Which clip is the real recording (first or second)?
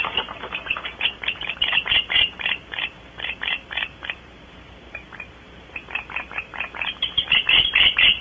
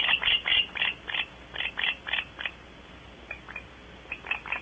second